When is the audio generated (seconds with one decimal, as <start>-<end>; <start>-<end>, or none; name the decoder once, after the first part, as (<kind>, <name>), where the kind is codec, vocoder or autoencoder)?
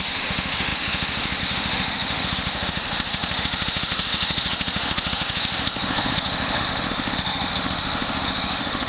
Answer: 0.0-8.9 (autoencoder, DAC-VAE)